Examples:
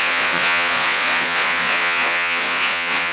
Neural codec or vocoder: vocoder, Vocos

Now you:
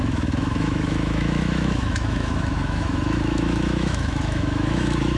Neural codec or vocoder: autoencoder, DAC-VAE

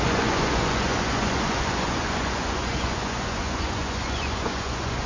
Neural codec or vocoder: vocoder, Vocos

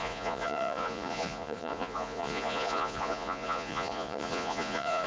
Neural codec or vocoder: vocoder, Vocos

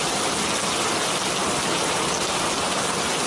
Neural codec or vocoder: none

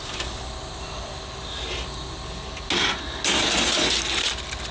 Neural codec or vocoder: none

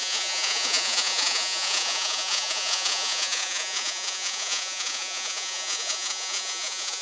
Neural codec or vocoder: vocoder, Vocos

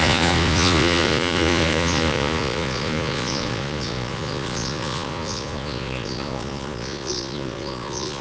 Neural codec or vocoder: vocoder, Vocos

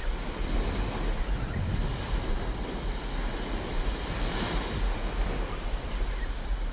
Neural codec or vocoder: none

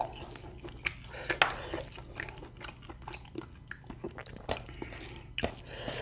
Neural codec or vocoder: none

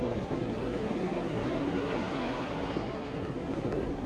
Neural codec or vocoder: codec, SNAC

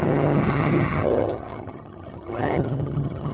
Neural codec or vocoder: vocoder, HiFi-GAN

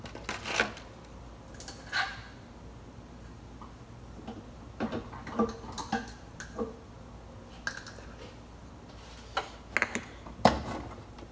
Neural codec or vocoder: none